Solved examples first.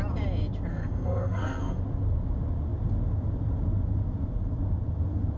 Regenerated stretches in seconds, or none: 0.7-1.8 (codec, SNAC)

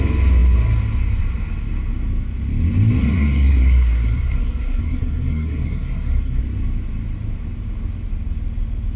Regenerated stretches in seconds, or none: 3.0-6.4 (codec, SNAC)

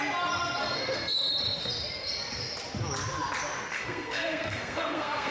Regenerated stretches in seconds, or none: 0.6-1.3 (codec, SNAC); 3.7-5.3

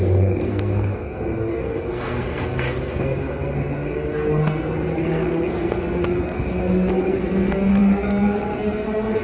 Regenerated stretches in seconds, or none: 0.0-9.2 (codec, SNAC)